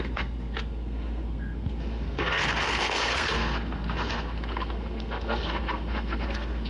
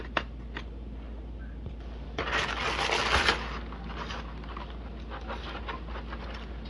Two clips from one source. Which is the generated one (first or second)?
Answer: first